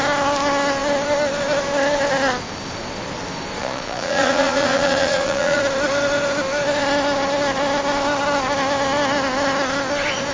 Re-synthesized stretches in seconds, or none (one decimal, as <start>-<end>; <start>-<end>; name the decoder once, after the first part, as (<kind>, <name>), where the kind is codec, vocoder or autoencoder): 3.6-5.6 (vocoder, Vocos)